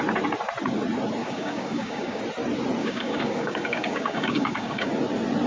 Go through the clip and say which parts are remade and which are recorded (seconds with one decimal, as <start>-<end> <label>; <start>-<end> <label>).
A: 0.0-1.2 recorded; 1.2-2.2 remade; 2.2-2.8 recorded; 2.8-4.9 remade; 4.9-5.5 recorded